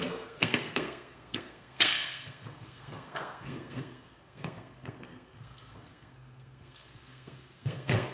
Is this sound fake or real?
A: fake